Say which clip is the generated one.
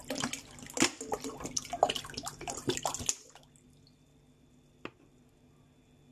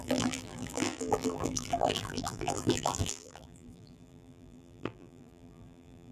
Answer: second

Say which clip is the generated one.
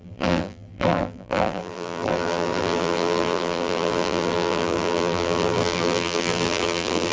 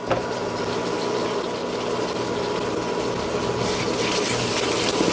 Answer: first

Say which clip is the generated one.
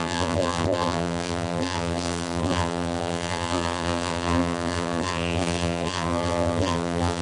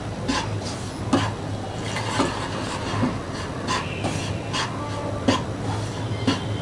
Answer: first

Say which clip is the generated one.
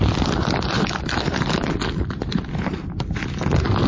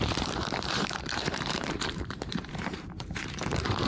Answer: second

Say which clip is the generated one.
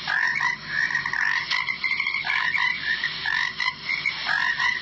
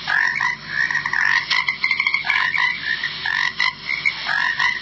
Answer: first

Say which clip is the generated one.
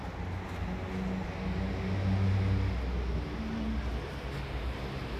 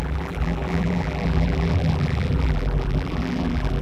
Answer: second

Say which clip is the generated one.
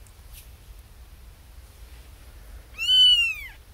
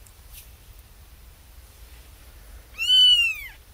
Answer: second